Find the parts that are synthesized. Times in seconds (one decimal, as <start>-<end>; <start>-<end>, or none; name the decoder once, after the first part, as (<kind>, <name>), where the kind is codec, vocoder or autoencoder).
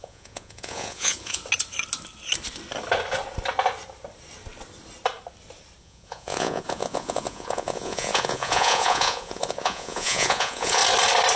0.0-1.4 (vocoder, Vocos); 5.8-10.8